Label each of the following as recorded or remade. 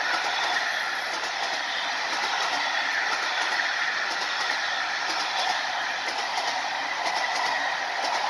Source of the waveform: recorded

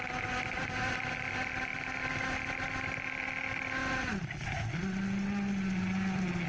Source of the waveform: recorded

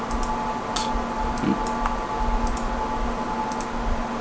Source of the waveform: recorded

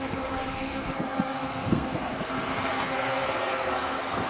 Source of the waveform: remade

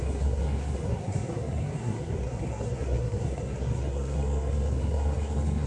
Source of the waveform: remade